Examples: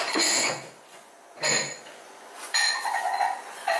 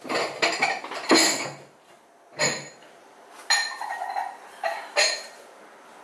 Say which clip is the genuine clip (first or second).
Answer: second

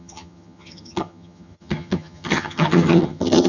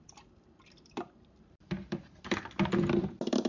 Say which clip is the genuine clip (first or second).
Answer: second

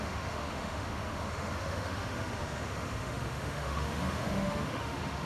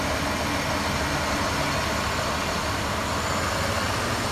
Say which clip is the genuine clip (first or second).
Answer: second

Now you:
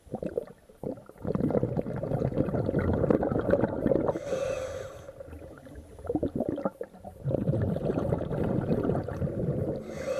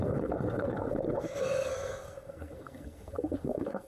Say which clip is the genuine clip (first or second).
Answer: first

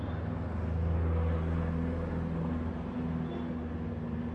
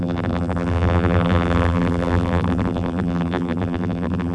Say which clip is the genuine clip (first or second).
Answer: first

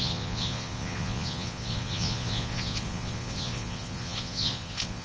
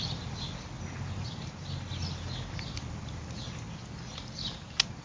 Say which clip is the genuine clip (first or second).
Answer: second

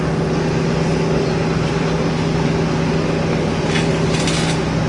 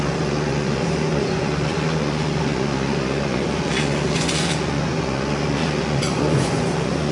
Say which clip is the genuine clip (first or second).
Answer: first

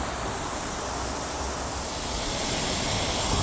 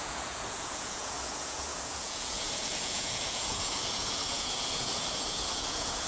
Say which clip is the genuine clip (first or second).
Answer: first